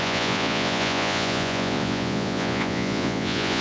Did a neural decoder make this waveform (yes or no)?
yes